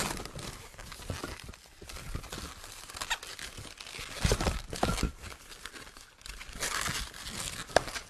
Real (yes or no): yes